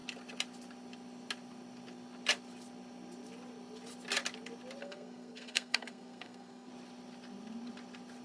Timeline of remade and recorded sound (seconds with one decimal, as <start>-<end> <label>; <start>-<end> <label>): 0.0-4.8 recorded; 4.8-6.7 remade; 6.7-8.2 recorded